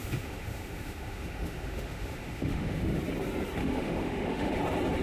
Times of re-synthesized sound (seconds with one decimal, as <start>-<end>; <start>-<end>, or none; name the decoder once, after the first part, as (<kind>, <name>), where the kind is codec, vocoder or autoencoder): 0.0-3.0 (autoencoder, DAC-VAE); 3.6-4.6